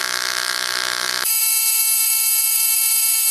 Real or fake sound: fake